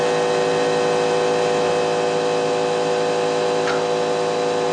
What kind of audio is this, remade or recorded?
recorded